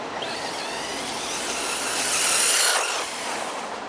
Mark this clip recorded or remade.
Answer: recorded